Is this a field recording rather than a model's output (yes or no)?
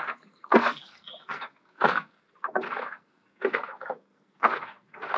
no